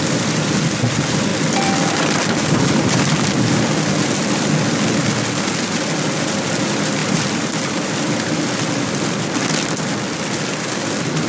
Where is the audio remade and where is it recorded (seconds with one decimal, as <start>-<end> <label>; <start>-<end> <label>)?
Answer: 0.0-1.3 recorded; 1.3-2.9 remade; 2.9-7.0 recorded; 7.0-9.6 remade; 9.6-11.3 recorded